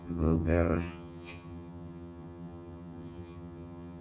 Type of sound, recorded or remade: remade